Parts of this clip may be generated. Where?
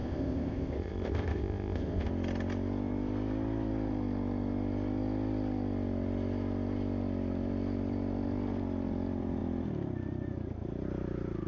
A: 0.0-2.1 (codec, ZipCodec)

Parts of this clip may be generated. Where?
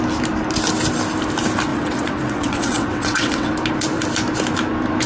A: 1.7-3.5 (vocoder, WaveNeXt)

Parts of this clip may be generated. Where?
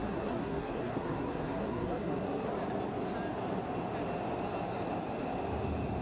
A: 0.0-2.5 (codec, SNAC)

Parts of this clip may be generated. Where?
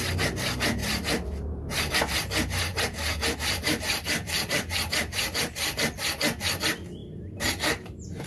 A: 0.8-1.9 (vocoder, BigVGAN v2); 2.7-5.8; 7.0-8.3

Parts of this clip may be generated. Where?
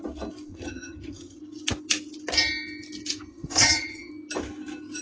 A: 0.5-1.4 (vocoder, HiFi-GAN); 3.3-4.1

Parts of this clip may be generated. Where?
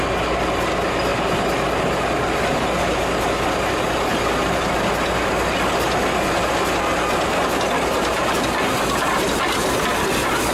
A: none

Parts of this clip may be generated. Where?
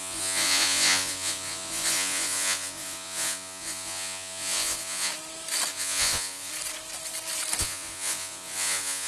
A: 0.0-5.1 (vocoder, Vocos); 5.7-6.5; 7.6-9.1